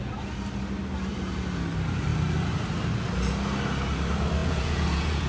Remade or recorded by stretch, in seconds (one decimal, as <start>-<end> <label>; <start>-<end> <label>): 0.0-4.4 recorded; 4.4-5.3 remade